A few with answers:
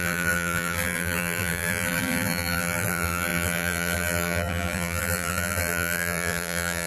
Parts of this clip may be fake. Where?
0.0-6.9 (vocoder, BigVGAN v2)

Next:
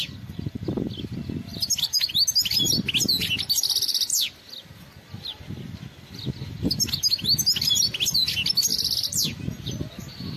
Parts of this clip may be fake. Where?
1.5-2.2 (vocoder, BigVGAN v2); 8.7-9.8

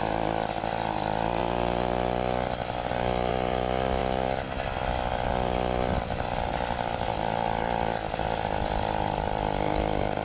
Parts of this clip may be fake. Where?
0.0-1.4 (vocoder, BigVGAN v2); 3.3-4.0; 5.3-10.2

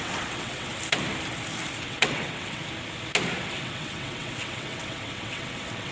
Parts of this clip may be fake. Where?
0.0-0.7 (vocoder, WaveNeXt); 1.8-2.6; 3.5-5.9

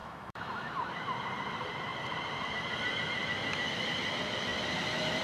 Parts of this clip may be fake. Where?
0.0-0.7 (autoencoder, DAC-VAE)

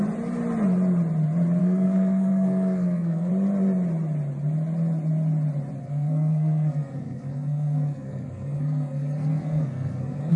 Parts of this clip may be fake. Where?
1.6-3.3 (codec, SNAC); 5.8-10.4